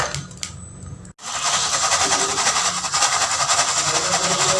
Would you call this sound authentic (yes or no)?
yes